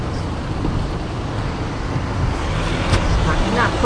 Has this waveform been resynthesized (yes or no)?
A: no